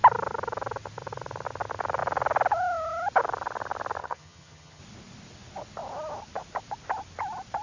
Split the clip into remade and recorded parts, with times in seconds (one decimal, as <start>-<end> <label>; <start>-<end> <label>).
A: 0.0-4.0 recorded; 4.0-4.8 remade; 4.8-7.6 recorded